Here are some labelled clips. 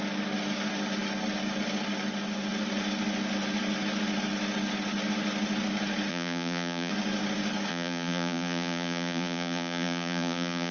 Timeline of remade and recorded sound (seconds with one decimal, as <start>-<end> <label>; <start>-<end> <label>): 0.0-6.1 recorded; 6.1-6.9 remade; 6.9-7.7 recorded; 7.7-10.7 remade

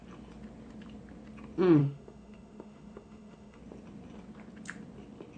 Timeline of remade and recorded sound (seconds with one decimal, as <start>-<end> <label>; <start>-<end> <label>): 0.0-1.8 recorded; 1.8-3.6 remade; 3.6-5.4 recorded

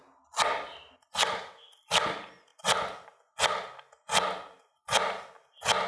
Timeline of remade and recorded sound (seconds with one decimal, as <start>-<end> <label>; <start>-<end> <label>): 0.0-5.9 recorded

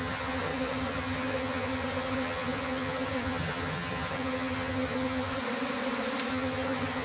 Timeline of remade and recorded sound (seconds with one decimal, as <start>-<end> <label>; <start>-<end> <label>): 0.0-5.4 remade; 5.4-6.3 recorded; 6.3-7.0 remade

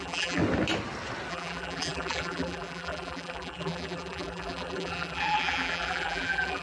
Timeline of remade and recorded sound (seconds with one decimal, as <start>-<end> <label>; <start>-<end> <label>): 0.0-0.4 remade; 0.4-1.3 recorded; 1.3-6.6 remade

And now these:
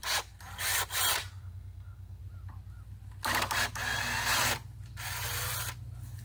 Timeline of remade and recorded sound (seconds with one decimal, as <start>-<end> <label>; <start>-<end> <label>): 0.0-1.3 recorded; 1.3-2.2 remade; 2.2-6.2 recorded